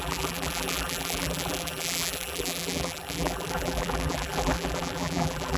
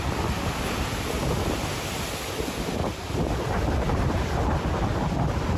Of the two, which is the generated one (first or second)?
first